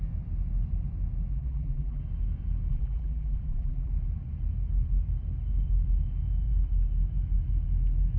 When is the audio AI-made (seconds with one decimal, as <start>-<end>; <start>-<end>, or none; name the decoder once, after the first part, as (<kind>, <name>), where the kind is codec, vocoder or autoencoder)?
1.3-2.0 (vocoder, BigVGAN v2); 2.7-3.9